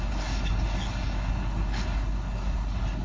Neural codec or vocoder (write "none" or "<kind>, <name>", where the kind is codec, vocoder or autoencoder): codec, HILCodec